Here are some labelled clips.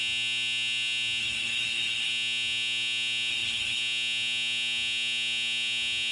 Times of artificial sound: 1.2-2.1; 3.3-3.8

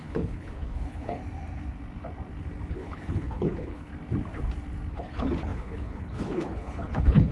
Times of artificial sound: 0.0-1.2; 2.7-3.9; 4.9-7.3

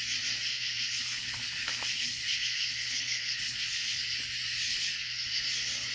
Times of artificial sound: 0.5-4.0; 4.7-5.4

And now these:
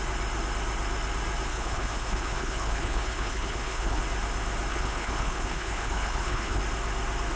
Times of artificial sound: 1.5-4.0; 4.7-6.6